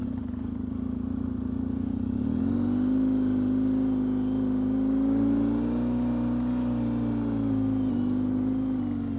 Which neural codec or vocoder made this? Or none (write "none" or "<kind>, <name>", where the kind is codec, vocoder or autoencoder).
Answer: none